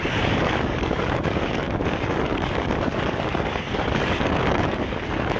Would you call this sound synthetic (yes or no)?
yes